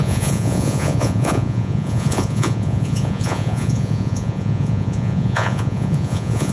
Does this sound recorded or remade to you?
remade